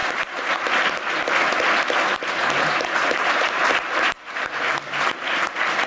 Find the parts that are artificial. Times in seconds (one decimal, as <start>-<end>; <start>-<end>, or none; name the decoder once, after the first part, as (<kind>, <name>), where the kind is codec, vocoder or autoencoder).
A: 0.0-0.5 (vocoder, BigVGAN v2); 3.0-4.5